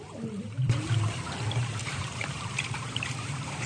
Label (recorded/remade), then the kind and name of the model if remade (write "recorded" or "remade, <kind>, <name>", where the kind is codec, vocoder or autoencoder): remade, vocoder, BigVGAN v2